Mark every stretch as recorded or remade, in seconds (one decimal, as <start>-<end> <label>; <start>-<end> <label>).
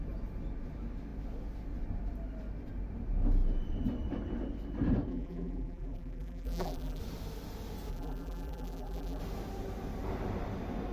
0.0-5.1 recorded; 5.1-7.0 remade; 7.0-7.9 recorded; 7.9-9.2 remade; 9.2-10.9 recorded